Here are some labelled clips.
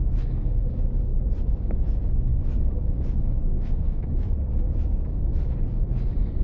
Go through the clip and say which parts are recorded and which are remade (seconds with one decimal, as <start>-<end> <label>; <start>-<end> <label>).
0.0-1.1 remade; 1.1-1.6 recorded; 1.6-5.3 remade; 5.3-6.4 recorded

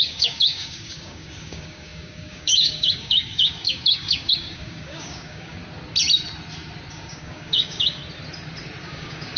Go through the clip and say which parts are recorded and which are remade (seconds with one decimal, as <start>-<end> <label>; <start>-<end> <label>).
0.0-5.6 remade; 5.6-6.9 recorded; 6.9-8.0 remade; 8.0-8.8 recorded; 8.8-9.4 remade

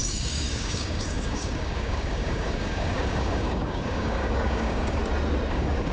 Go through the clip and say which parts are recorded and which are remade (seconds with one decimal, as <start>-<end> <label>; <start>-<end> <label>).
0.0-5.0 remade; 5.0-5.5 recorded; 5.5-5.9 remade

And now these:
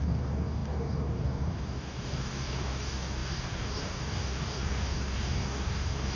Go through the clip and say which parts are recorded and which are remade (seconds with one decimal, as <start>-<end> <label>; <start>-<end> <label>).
0.0-6.2 remade

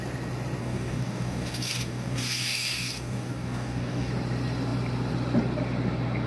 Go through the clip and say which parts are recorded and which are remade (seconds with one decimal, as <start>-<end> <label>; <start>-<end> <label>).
0.0-0.6 recorded; 0.6-4.1 remade; 4.1-6.3 recorded